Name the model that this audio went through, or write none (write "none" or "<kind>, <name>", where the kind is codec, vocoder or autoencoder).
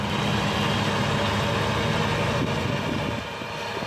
none